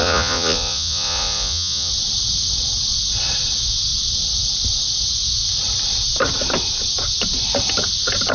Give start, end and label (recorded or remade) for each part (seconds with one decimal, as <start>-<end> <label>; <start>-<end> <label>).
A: 0.0-1.9 remade; 1.9-8.3 recorded